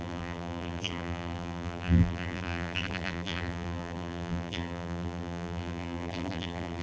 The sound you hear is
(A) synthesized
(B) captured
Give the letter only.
A